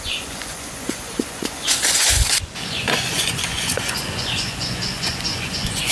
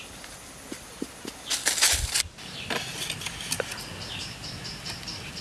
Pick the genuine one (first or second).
second